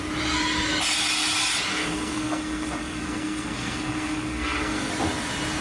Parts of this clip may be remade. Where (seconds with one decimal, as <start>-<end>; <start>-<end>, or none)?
1.7-4.9